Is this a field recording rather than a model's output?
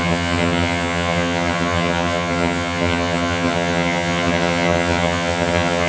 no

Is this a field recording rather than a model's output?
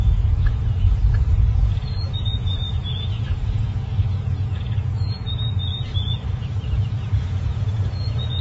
no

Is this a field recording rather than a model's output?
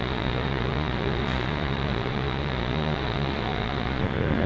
no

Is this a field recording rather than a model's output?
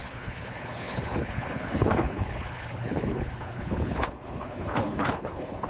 no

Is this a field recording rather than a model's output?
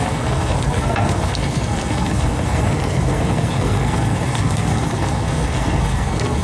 no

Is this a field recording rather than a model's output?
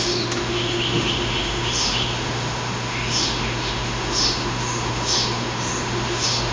no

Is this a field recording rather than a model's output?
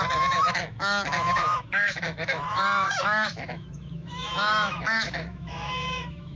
no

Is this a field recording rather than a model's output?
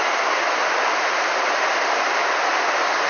yes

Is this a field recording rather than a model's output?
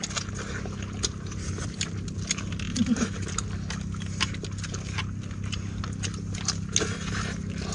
yes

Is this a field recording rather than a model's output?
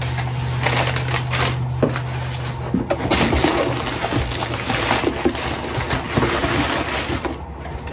yes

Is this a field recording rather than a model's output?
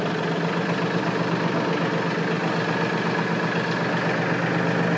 yes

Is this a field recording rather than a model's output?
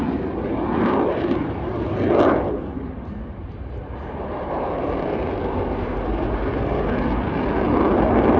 yes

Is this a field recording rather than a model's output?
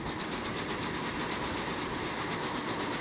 yes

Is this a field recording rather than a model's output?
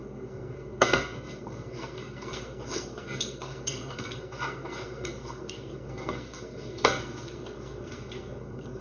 no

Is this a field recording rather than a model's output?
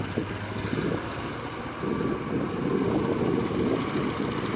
yes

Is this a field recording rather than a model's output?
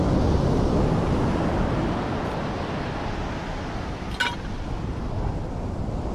yes